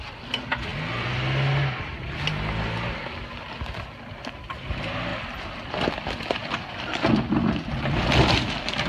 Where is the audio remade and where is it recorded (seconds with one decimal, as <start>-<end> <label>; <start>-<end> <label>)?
0.0-8.9 recorded